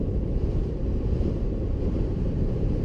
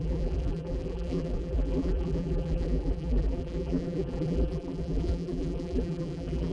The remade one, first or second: second